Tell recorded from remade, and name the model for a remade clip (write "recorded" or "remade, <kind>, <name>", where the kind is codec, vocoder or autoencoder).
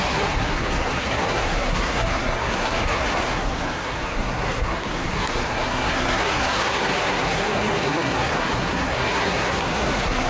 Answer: remade, codec, SNAC